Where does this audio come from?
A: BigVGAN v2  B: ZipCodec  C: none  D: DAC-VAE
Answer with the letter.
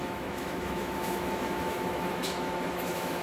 D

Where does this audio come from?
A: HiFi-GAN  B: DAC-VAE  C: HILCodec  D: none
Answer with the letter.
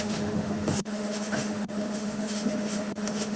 B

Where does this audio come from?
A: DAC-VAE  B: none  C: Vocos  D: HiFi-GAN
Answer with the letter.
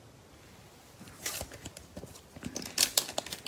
B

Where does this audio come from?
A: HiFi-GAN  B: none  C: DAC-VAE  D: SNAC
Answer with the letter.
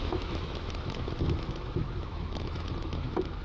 C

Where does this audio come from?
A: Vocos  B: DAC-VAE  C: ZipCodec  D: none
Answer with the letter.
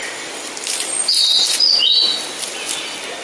D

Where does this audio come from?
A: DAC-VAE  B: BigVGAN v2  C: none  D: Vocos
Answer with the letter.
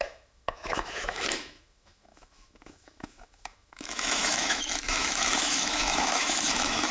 A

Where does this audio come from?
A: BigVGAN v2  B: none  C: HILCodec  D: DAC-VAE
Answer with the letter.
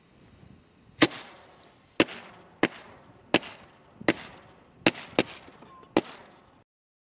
B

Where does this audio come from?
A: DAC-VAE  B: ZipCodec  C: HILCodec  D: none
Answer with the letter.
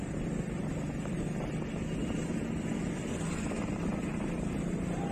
D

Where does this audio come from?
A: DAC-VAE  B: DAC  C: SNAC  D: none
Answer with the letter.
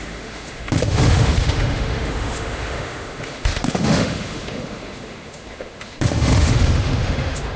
A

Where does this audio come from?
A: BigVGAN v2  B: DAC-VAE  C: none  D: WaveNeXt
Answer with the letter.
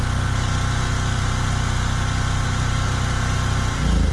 C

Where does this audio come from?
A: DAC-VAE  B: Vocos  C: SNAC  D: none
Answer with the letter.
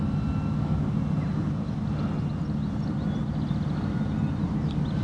D